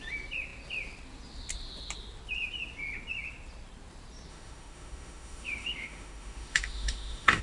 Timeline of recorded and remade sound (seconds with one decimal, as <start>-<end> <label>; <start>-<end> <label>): 0.0-4.3 recorded; 4.3-7.4 remade